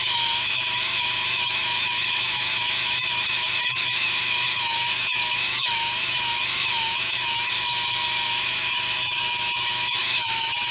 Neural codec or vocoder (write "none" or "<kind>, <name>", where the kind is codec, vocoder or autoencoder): autoencoder, DAC-VAE